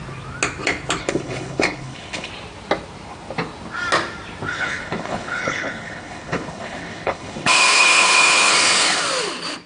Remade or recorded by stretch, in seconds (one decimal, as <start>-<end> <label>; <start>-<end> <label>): 0.0-1.0 recorded; 1.0-2.3 remade; 2.3-4.5 recorded; 4.5-9.0 remade; 9.0-9.7 recorded